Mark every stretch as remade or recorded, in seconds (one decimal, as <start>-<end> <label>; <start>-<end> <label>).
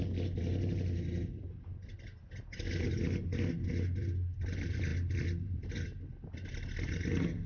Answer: 0.0-7.5 recorded